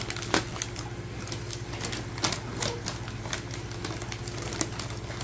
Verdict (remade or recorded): recorded